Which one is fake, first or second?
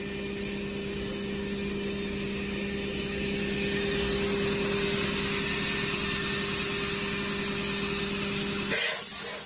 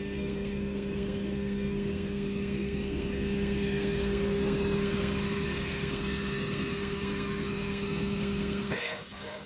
second